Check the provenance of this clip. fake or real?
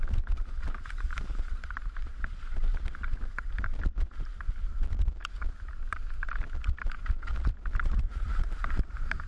fake